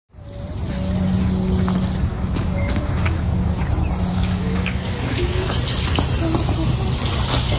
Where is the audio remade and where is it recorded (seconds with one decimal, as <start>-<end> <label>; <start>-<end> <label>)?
0.0-2.1 recorded; 2.1-3.6 remade; 3.6-4.1 recorded; 4.1-5.5 remade; 5.5-7.6 recorded